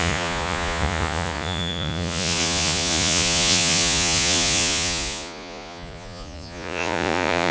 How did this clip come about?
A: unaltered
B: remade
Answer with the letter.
B